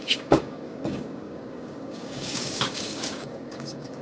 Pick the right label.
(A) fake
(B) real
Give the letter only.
A